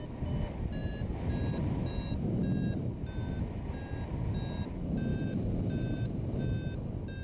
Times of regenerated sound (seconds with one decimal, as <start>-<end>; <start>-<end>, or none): 5.1-6.4